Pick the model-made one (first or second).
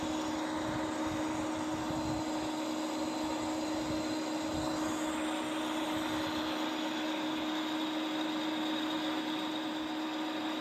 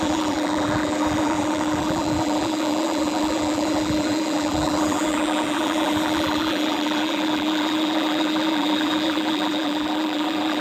second